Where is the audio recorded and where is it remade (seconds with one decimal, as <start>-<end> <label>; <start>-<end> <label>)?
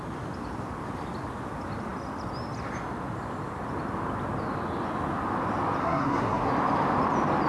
0.0-5.8 recorded; 5.8-6.5 remade; 6.5-7.5 recorded